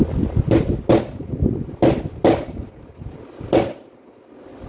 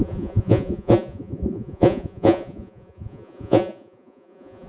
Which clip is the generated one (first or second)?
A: second